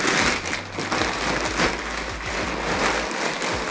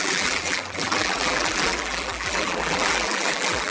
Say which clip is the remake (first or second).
second